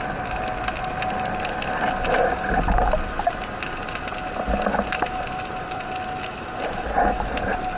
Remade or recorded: recorded